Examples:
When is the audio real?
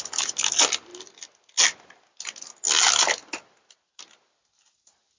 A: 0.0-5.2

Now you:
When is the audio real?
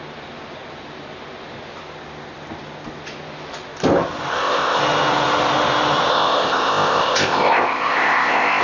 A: 0.0-4.3; 4.8-6.1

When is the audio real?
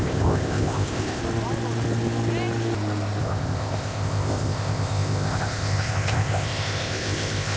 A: 1.2-3.2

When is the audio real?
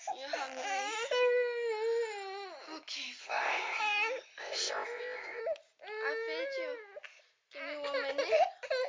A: 0.0-3.2; 3.8-4.4; 5.4-8.9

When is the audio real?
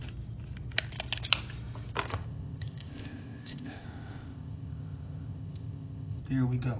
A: 0.0-2.1; 6.2-6.8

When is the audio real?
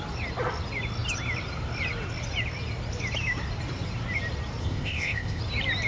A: 0.0-4.6; 5.4-5.9